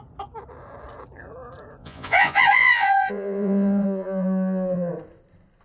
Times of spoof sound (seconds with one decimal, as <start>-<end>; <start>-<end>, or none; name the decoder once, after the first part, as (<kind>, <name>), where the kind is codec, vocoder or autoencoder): 1.8-4.9 (vocoder, Vocos)